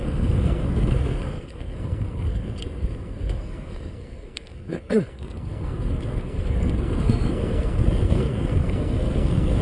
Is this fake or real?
fake